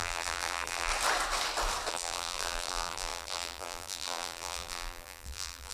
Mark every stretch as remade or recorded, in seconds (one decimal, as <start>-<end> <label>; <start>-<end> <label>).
0.0-0.9 remade; 0.9-1.9 recorded; 1.9-5.7 remade